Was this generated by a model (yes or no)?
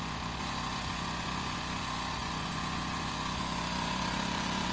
yes